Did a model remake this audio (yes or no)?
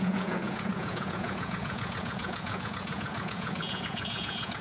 yes